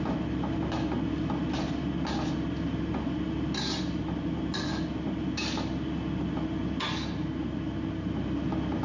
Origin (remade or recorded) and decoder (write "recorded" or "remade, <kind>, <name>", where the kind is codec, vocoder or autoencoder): recorded